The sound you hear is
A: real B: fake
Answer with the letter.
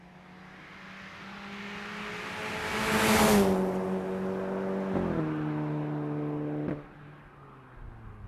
A